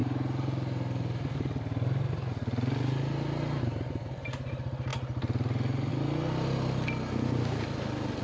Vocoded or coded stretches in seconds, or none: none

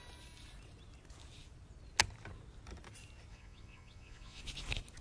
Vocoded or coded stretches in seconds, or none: 3.3-4.4 (vocoder, Vocos)

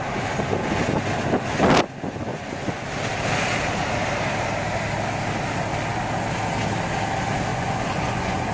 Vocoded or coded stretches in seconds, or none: 2.3-2.9 (vocoder, Vocos); 7.5-8.5

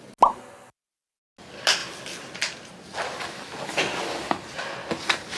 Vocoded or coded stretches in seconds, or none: none

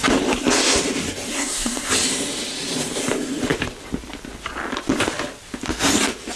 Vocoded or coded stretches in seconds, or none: 1.3-1.9 (codec, SNAC)

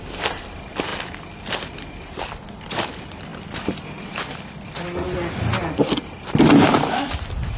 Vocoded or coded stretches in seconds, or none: none